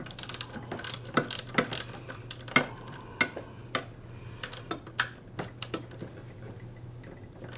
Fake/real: real